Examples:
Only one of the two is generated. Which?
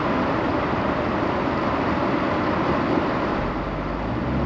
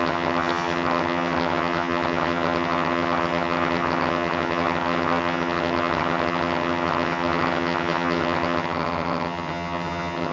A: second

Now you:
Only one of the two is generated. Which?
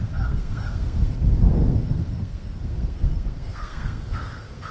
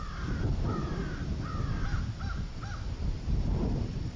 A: first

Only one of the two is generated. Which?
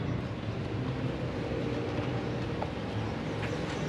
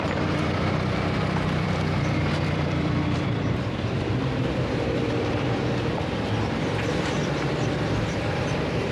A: second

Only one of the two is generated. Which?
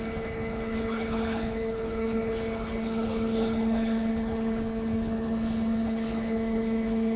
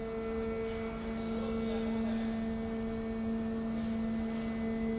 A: first